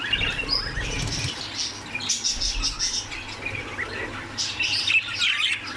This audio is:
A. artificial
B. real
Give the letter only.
B